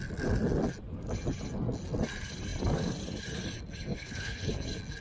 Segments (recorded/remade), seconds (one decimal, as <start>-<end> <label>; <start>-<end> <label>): 0.0-3.9 recorded; 3.9-4.5 remade; 4.5-5.0 recorded